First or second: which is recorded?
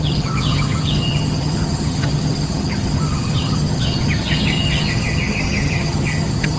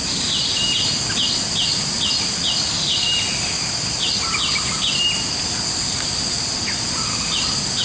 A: second